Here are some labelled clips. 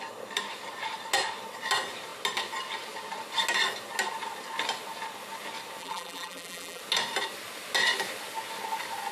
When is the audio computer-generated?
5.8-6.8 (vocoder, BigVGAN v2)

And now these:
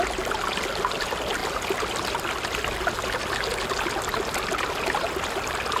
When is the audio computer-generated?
none

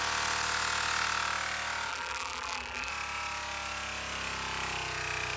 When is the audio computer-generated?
1.9-2.9 (vocoder, BigVGAN v2)

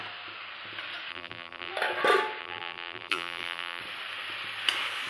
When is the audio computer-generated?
1.1-1.7 (vocoder, BigVGAN v2); 2.4-3.8

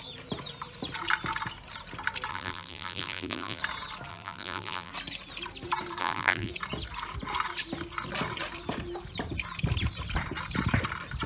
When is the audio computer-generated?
2.3-3.6 (vocoder, BigVGAN v2); 4.1-4.9; 6.0-6.5

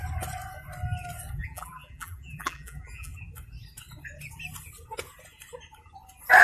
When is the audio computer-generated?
1.3-3.1 (vocoder, BigVGAN v2)

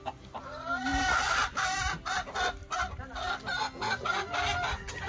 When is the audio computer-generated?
none

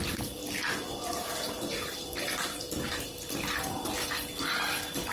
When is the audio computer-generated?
0.0-0.4 (vocoder, BigVGAN v2); 3.5-5.1